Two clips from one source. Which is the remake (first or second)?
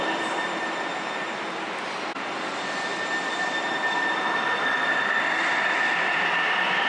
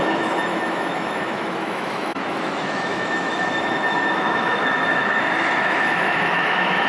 second